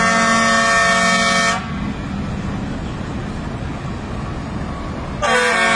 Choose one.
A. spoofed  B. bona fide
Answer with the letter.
B